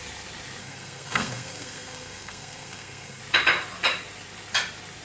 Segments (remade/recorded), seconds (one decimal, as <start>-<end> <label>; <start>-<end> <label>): 0.0-0.6 recorded; 0.6-3.2 remade; 3.2-5.0 recorded